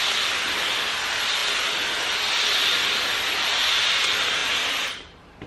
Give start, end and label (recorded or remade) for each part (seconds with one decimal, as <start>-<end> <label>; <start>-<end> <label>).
0.0-4.4 recorded; 4.4-5.5 remade